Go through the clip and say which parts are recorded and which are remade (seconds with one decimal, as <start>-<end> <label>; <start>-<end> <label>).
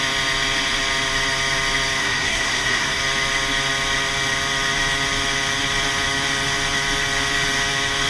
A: 0.0-2.0 recorded; 2.0-3.0 remade; 3.0-8.1 recorded